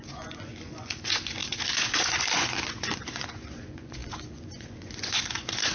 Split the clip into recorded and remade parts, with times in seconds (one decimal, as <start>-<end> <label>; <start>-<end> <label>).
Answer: 0.0-5.7 remade